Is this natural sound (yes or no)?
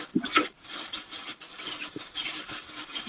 yes